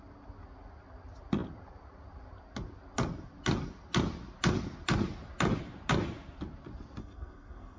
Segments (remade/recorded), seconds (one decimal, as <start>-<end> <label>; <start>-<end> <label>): 0.0-7.0 recorded; 7.0-7.8 remade